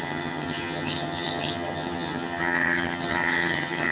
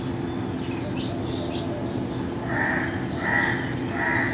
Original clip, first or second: second